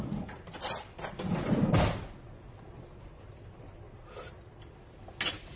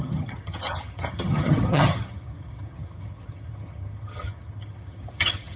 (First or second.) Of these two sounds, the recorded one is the first